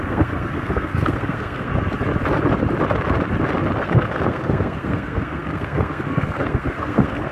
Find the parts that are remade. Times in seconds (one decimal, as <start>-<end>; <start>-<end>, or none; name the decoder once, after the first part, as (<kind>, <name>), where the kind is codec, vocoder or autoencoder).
0.0-1.7 (codec, SNAC); 3.8-7.3